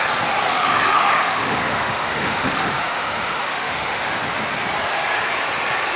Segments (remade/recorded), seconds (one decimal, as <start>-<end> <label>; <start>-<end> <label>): 0.0-0.5 recorded; 0.5-4.1 remade; 4.1-6.0 recorded